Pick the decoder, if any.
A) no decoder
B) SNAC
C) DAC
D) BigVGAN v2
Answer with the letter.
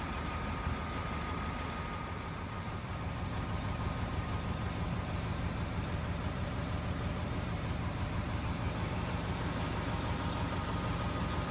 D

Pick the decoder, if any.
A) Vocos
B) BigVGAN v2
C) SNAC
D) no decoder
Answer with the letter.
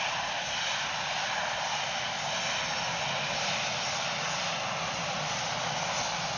D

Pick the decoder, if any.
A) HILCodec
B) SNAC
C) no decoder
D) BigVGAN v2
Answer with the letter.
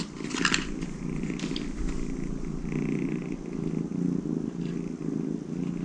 C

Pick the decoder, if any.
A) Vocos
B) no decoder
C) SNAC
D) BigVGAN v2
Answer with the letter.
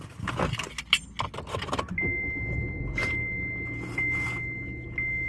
B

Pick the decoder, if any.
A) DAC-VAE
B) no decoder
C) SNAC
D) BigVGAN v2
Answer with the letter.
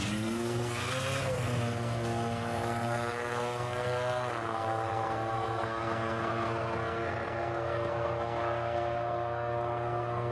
C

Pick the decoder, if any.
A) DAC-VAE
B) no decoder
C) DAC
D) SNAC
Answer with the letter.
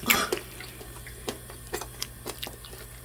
B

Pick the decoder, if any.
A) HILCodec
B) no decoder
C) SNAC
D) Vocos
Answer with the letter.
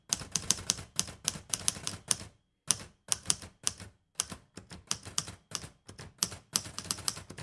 B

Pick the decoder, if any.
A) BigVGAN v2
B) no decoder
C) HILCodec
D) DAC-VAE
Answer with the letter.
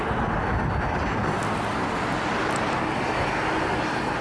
B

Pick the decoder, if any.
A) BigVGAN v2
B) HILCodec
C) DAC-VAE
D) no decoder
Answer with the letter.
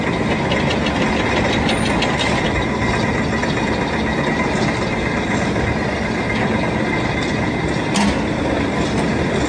D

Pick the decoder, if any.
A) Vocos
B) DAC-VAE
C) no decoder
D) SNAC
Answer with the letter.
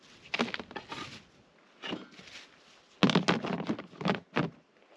C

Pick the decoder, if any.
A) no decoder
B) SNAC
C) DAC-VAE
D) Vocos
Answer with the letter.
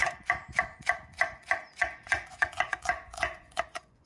D